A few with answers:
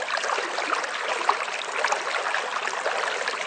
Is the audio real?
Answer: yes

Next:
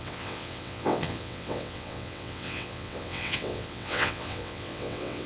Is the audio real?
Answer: no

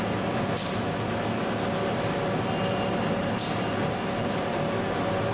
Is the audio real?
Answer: yes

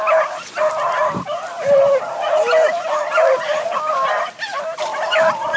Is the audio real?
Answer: yes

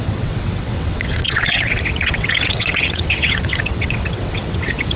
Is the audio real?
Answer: no